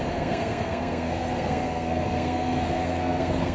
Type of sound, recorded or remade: remade